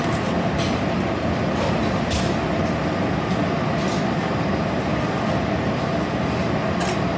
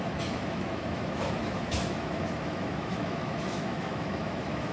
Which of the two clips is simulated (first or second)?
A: second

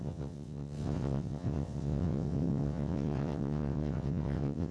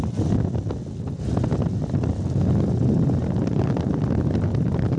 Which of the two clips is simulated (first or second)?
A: first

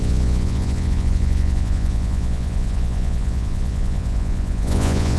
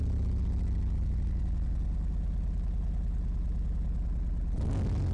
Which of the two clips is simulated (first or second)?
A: first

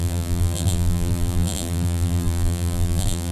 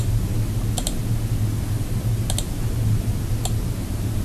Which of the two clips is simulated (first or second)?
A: first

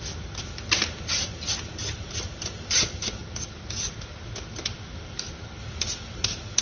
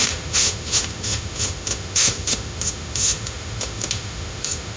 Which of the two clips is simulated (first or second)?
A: second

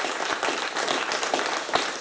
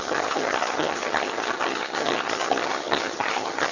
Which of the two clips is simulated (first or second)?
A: second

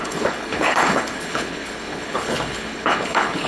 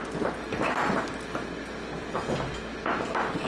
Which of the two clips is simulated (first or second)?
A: first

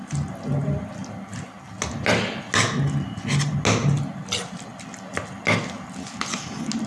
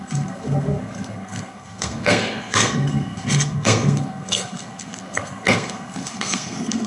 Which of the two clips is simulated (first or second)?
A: second